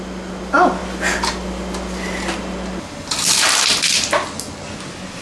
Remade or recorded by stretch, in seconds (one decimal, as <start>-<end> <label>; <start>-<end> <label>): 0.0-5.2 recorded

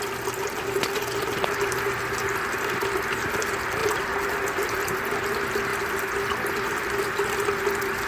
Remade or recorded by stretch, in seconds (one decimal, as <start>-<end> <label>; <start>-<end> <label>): 0.0-8.1 recorded

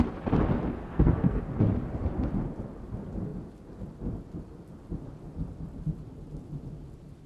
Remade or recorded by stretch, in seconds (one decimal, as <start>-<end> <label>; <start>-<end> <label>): 0.0-0.8 recorded; 0.8-1.4 remade; 1.4-7.3 recorded

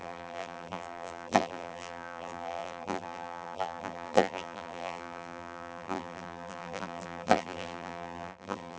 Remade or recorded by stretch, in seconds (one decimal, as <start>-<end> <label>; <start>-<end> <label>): 0.0-8.8 remade

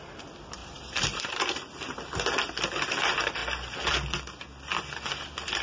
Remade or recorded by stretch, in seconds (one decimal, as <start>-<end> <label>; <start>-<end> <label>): 0.0-0.6 recorded; 0.6-1.4 remade; 1.4-5.6 recorded